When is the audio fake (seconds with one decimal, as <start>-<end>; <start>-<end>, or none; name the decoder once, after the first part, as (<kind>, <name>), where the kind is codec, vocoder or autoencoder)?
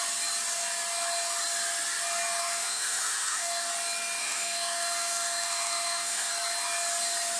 2.4-3.7 (autoencoder, DAC-VAE); 4.2-6.3